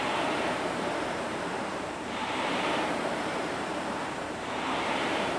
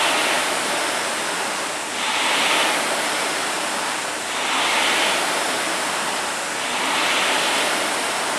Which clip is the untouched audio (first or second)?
second